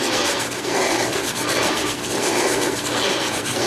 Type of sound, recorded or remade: remade